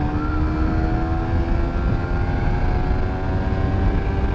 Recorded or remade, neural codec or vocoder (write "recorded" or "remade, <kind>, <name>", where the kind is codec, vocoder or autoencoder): recorded